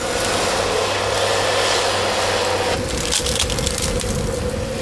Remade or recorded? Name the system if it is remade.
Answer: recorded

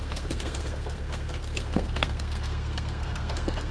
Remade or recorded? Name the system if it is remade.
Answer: remade, codec, SNAC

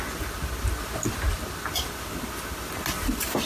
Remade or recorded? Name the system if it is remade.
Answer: recorded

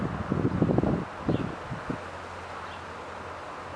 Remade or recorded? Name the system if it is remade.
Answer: recorded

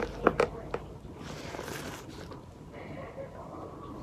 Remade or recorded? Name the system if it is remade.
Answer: recorded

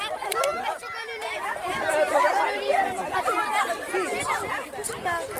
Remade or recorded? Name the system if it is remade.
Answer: recorded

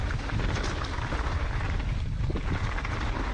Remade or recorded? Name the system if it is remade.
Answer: recorded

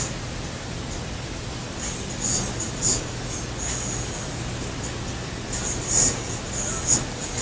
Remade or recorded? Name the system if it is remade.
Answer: recorded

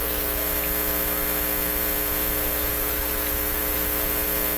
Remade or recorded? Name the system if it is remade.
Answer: recorded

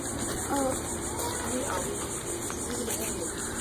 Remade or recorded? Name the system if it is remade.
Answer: recorded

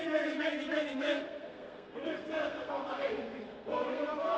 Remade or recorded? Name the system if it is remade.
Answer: remade, codec, SNAC